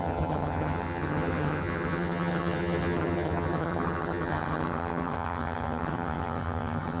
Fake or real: fake